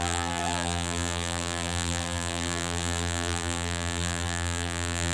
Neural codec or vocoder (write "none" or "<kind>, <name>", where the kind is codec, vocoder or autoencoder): vocoder, BigVGAN v2